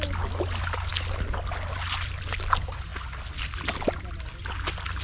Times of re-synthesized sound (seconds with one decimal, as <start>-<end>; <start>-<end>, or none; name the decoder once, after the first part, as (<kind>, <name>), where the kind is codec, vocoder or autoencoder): none